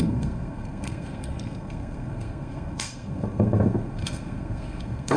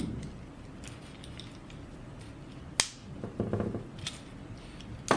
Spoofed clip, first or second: first